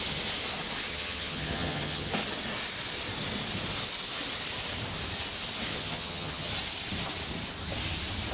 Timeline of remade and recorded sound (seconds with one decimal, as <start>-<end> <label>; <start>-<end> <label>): 0.0-0.9 recorded; 0.9-2.1 remade; 2.1-5.7 recorded; 5.7-6.5 remade; 6.5-8.3 recorded

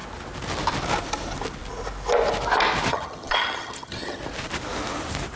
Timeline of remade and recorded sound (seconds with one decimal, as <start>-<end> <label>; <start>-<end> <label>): 0.0-2.9 recorded; 2.9-4.2 remade; 4.2-5.4 recorded

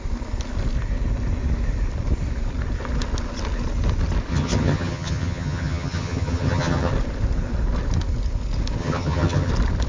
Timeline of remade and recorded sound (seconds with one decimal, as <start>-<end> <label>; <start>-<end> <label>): 0.0-4.3 recorded; 4.3-6.9 remade; 6.9-8.8 recorded; 8.8-9.5 remade; 9.5-9.9 recorded

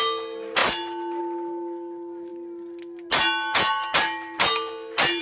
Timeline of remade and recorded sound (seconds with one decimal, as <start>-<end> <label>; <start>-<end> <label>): 0.0-5.2 recorded

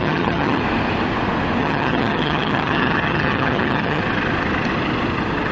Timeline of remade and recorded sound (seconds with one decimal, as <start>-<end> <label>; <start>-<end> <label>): 0.0-0.6 remade; 0.6-1.6 recorded; 1.6-4.0 remade; 4.0-5.5 recorded